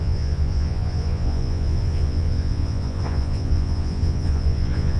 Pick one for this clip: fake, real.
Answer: fake